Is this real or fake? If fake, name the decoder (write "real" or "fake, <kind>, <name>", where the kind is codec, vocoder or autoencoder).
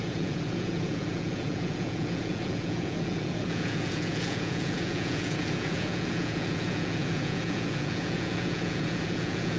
fake, vocoder, Vocos